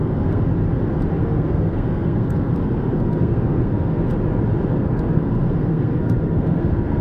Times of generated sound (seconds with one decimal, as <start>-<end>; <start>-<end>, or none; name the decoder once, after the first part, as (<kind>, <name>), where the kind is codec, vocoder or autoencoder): 0.0-0.5 (codec, SNAC); 1.1-4.1; 4.7-7.0